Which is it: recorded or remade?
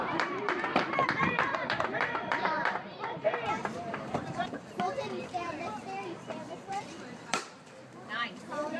remade